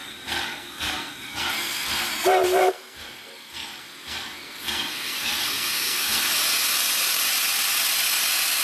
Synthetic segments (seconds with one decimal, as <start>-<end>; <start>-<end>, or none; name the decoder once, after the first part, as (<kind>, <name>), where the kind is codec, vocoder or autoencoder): 0.0-2.1 (codec, SNAC); 2.6-6.3